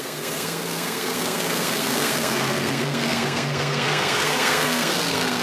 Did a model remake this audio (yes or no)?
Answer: yes